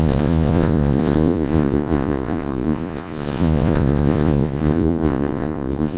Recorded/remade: remade